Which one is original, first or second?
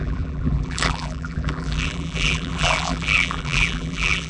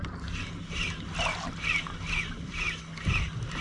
second